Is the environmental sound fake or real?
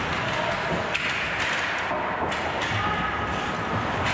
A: real